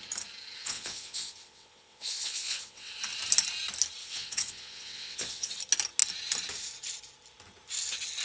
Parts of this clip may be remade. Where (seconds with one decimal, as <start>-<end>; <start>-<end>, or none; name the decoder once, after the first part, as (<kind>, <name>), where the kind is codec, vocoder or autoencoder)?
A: 0.6-2.9 (vocoder, WaveNeXt); 4.0-5.5